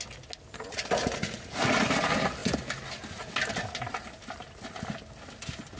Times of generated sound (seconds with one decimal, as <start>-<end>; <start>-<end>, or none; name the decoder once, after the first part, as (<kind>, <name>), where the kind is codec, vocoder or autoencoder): 1.0-1.6 (vocoder, Vocos)